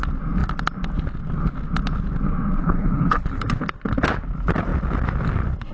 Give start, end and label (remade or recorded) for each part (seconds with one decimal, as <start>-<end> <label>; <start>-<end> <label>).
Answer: 0.0-2.6 recorded; 2.6-3.4 remade; 3.4-5.7 recorded